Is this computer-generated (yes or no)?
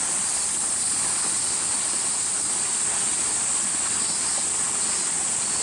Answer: no